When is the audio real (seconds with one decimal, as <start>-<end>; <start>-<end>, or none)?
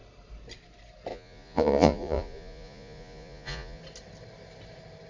0.0-1.1; 3.8-5.1